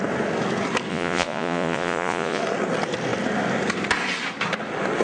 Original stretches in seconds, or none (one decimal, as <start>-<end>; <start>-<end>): 0.0-0.9; 2.4-5.0